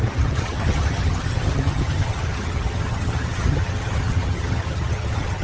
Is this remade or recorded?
remade